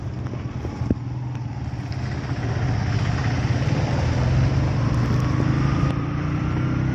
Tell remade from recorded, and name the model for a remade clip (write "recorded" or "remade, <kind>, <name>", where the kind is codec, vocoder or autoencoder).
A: recorded